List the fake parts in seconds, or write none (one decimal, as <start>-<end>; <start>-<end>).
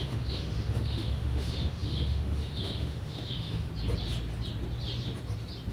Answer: 0.0-3.7